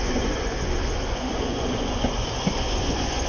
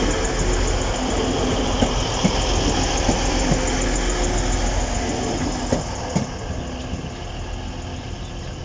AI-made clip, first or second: first